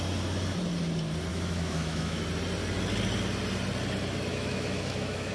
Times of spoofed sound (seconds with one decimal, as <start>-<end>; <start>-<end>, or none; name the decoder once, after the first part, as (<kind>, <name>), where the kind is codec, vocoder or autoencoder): 1.3-2.2 (autoencoder, DAC-VAE); 4.3-5.3